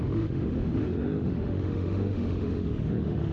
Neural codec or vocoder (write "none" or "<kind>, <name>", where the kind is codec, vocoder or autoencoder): autoencoder, DAC-VAE